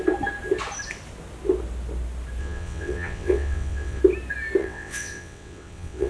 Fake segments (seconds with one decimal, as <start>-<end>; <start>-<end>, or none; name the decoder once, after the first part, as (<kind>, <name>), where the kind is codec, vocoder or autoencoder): 2.4-4.0 (vocoder, WaveNeXt); 4.6-6.1